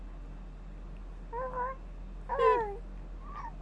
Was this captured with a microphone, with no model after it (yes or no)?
yes